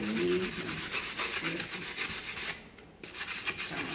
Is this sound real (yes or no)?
no